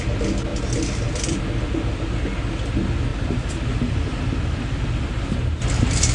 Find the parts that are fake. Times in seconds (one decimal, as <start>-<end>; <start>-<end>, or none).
0.5-1.4; 3.1-5.2